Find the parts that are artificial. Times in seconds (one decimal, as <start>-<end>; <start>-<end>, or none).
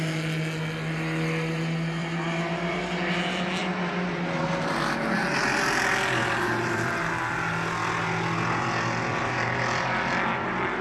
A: 2.0-2.8; 3.6-7.0; 9.1-10.3